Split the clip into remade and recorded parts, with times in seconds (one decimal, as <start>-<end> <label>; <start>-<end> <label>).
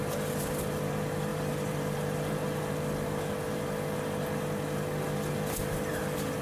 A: 0.0-1.3 recorded; 1.3-2.4 remade; 2.4-6.4 recorded